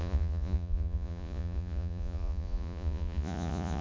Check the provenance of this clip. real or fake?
fake